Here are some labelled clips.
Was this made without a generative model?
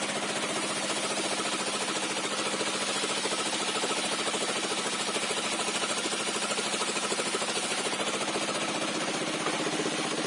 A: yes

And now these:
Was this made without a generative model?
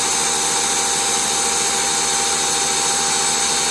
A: yes